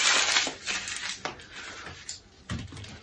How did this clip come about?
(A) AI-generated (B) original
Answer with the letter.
B